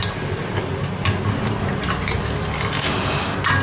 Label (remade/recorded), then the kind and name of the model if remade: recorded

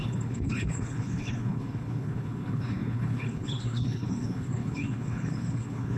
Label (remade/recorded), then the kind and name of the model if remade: remade, codec, HILCodec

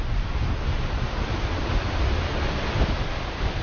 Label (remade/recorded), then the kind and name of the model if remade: recorded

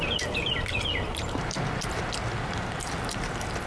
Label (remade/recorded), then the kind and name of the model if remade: recorded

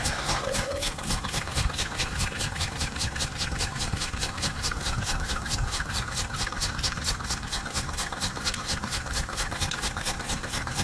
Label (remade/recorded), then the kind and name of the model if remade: remade, codec, SNAC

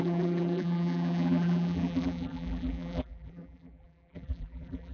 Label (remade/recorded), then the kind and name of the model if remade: remade, vocoder, BigVGAN v2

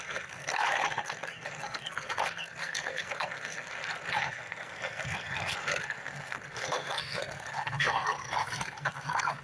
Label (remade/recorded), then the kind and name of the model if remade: remade, codec, SNAC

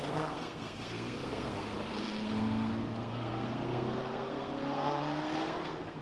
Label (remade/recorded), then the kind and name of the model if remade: remade, codec, SNAC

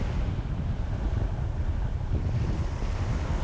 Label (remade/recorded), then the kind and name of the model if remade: recorded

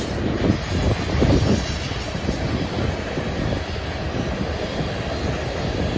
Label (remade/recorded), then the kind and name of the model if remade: recorded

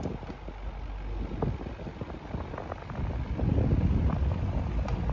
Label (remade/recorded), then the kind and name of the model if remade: recorded